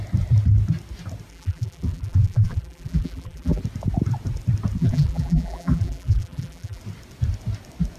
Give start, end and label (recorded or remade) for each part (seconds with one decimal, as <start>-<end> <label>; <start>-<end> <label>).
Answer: 0.0-1.3 recorded; 1.3-3.6 remade; 3.6-4.8 recorded; 4.8-6.8 remade; 6.8-8.0 recorded